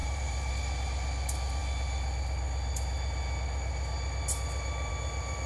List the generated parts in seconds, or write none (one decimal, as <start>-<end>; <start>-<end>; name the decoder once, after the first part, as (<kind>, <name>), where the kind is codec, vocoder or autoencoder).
0.0-0.5 (vocoder, BigVGAN v2)